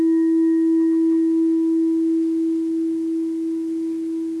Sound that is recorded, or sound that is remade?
recorded